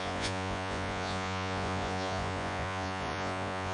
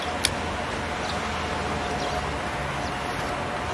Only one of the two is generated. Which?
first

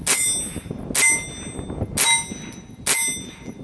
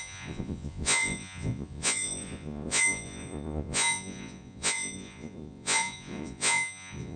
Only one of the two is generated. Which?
second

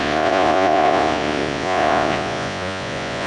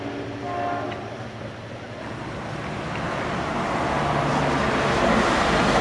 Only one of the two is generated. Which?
first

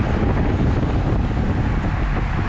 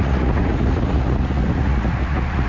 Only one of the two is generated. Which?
second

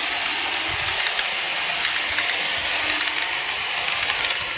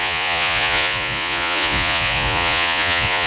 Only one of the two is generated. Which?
second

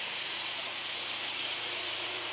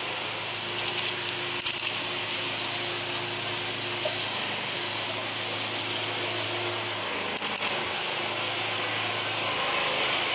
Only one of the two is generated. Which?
first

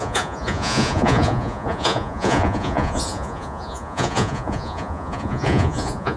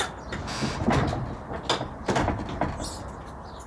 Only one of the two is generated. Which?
first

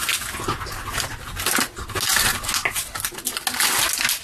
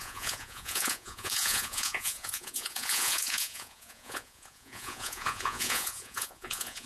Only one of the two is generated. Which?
second